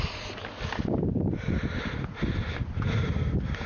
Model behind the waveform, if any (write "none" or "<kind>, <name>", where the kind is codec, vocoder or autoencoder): none